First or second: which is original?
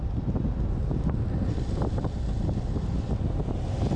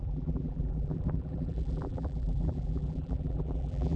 first